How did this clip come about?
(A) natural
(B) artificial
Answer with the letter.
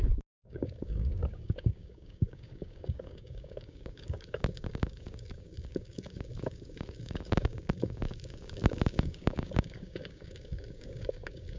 B